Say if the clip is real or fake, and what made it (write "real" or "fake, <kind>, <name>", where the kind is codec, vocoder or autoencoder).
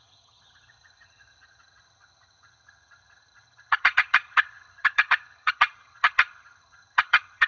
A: fake, vocoder, HiFi-GAN